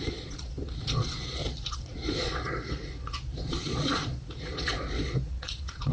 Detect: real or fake fake